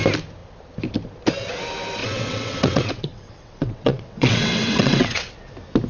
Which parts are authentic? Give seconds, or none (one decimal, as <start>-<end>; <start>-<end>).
0.0-2.0; 5.5-5.9